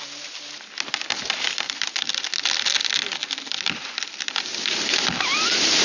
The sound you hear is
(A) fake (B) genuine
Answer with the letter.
B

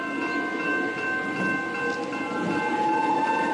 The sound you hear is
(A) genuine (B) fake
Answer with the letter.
A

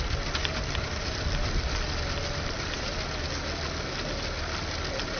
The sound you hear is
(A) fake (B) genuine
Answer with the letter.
B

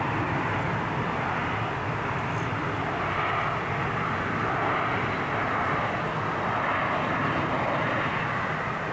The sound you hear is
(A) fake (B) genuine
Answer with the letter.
B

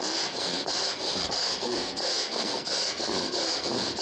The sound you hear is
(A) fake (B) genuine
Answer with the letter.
A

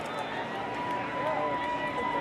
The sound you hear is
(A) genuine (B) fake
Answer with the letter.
A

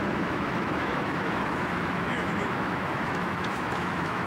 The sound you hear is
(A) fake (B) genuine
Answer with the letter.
A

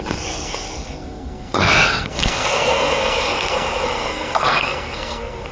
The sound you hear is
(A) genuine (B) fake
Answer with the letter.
B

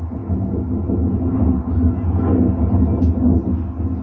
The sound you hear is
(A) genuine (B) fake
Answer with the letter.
A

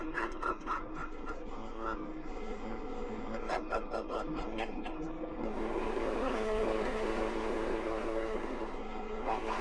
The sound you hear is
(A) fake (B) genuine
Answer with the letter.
A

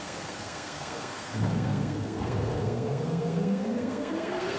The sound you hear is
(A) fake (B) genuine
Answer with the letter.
A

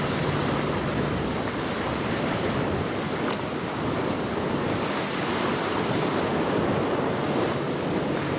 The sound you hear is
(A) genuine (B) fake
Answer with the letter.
A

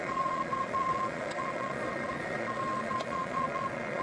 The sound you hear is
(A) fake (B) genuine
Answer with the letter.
A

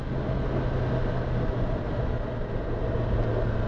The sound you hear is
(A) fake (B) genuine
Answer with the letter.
B